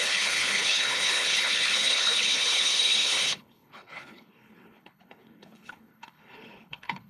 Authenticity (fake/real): fake